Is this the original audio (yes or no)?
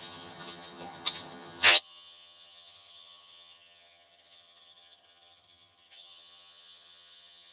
no